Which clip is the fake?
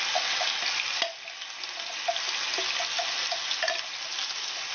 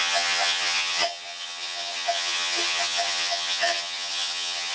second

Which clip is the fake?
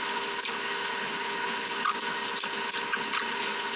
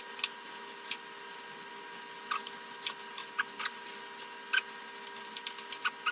first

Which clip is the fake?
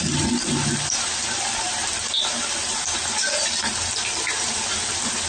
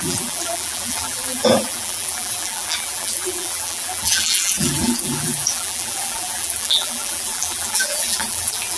second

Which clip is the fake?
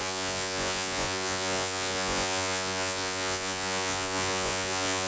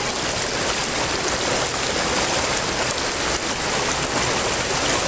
first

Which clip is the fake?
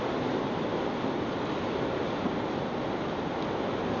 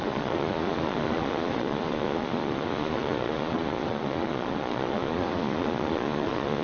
second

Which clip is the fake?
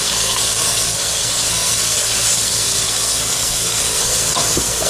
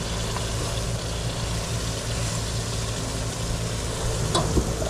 first